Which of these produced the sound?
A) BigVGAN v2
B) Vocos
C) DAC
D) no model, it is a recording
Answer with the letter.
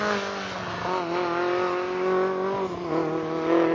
D